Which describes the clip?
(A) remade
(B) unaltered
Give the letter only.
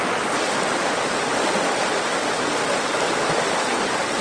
B